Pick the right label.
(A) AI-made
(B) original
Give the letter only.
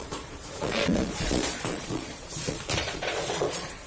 A